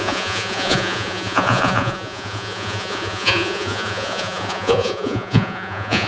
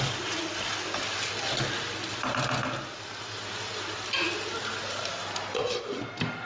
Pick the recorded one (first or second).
second